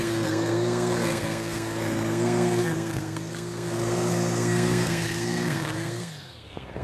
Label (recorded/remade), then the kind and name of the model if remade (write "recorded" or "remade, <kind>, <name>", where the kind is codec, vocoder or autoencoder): remade, codec, SNAC